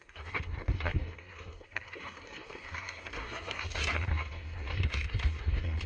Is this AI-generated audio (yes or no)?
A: yes